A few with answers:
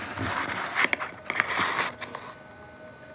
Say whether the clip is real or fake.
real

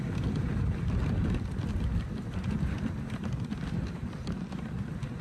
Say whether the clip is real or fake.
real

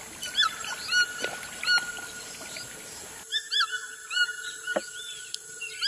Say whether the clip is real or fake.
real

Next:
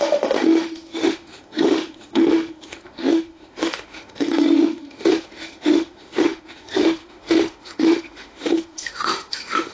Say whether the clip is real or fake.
fake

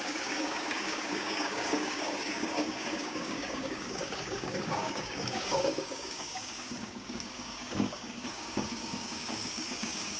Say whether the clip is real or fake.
fake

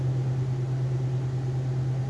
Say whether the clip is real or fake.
real